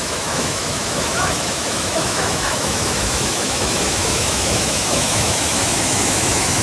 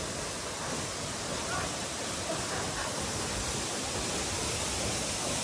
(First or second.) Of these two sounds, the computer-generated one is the first